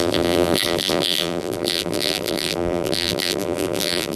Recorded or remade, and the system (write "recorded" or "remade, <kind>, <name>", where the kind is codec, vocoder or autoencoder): remade, vocoder, BigVGAN v2